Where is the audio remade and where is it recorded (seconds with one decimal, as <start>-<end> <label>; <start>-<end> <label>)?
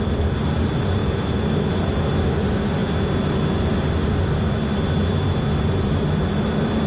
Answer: 0.0-1.0 recorded; 1.0-2.1 remade; 2.1-6.9 recorded